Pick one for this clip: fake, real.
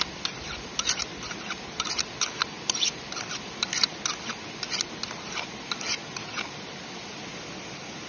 real